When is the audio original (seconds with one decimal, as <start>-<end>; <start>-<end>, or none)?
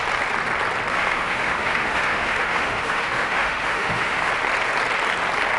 0.0-0.9; 4.3-5.6